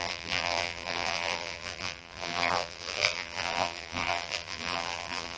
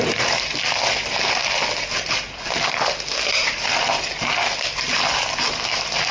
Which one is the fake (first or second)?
first